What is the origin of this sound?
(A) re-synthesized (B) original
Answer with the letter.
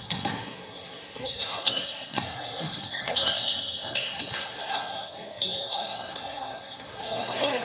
A